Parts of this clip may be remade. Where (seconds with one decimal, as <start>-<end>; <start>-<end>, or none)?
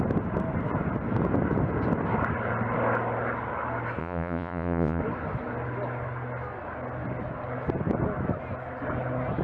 4.0-5.0